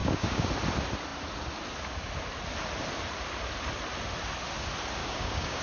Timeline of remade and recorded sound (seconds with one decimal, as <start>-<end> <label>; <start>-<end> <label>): 0.0-0.5 remade; 0.5-5.0 recorded; 5.0-5.6 remade